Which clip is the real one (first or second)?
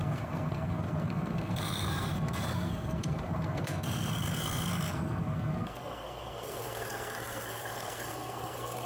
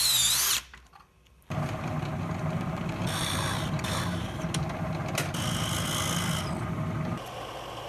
second